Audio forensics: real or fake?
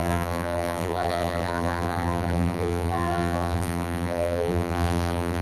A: fake